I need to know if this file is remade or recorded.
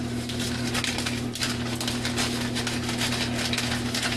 recorded